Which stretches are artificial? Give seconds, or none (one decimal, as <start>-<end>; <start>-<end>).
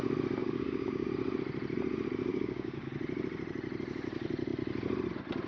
0.4-1.1; 2.3-2.9